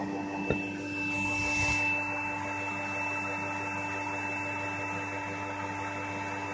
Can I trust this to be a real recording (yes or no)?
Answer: yes